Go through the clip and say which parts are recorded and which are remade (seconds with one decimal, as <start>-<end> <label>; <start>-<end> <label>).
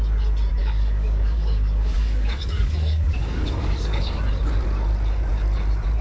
0.0-0.6 recorded; 0.6-4.2 remade; 4.2-6.0 recorded